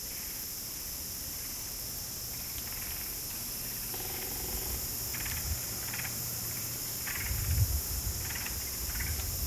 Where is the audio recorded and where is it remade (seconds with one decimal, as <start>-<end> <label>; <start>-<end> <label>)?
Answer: 0.0-5.1 recorded; 5.1-7.1 remade; 7.1-9.5 recorded